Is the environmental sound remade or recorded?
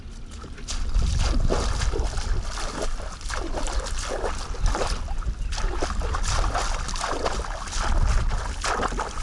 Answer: recorded